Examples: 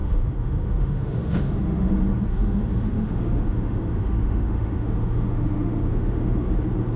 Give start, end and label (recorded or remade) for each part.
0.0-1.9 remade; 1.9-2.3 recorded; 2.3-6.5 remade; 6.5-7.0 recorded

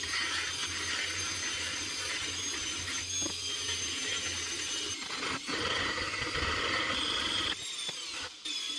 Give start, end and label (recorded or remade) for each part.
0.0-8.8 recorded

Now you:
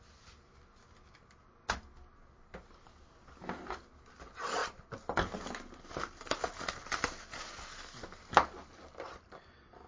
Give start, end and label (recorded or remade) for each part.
0.0-9.9 recorded